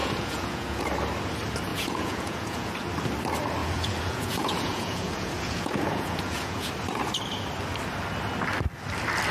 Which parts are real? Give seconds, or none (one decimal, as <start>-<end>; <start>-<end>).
0.8-1.7; 2.7-3.6; 6.7-9.3